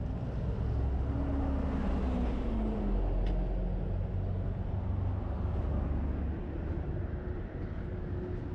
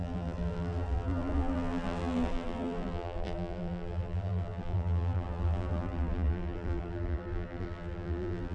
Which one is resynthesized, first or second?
second